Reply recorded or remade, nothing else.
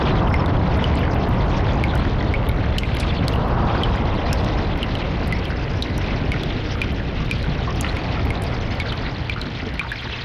recorded